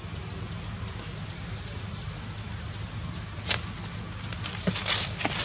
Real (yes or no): yes